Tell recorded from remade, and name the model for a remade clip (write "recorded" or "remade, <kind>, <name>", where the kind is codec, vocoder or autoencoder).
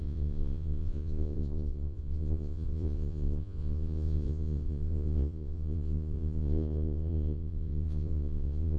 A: remade, vocoder, Vocos